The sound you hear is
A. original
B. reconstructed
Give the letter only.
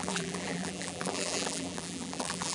B